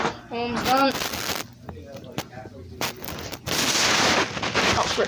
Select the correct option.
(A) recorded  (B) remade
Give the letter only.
A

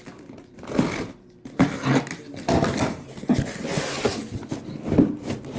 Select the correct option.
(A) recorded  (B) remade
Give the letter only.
A